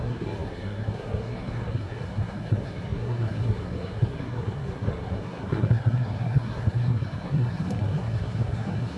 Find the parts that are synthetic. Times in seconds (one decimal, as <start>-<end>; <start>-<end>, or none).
0.0-9.0

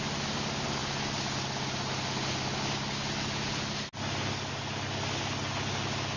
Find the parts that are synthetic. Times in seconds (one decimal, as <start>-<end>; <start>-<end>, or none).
none

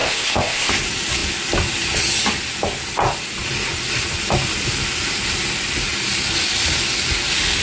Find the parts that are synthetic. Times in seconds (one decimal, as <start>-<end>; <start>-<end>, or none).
0.0-0.7

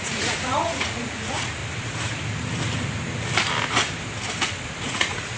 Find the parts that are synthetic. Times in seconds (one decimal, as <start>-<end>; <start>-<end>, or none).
0.0-1.6; 4.8-5.4

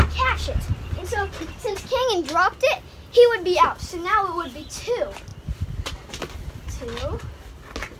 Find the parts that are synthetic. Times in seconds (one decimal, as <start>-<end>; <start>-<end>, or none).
none

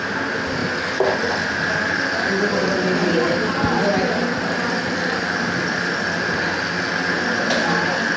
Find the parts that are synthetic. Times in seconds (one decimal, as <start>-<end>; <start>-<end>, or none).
none